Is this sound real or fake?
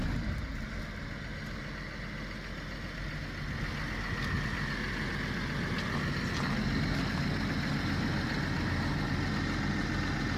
real